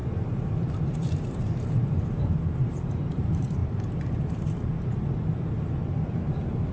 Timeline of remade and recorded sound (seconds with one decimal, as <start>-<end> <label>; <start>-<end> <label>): 0.0-6.7 remade